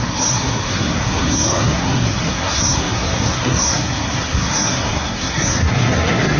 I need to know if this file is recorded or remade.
remade